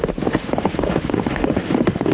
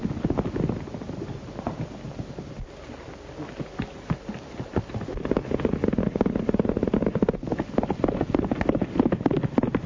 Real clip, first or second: second